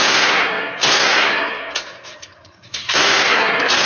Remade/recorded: remade